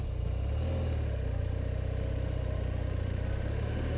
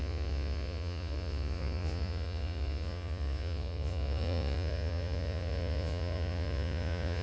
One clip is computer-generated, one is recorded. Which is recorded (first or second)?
first